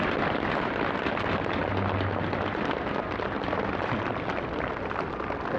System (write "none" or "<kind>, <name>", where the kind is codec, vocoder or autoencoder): none